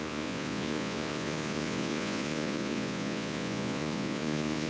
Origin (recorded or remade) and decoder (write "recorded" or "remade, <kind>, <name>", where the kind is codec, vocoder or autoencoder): remade, vocoder, Vocos